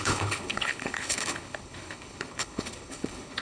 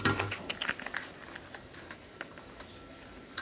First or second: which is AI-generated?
first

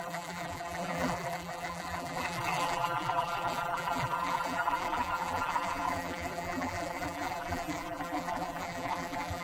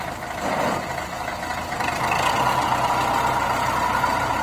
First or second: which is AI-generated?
first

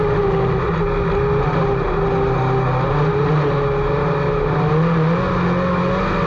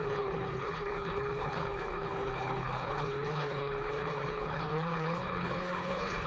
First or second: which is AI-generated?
second